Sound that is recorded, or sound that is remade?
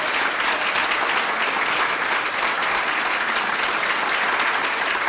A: recorded